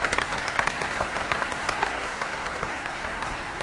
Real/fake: fake